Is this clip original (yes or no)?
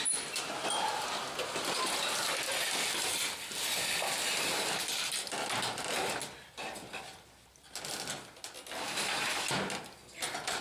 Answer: yes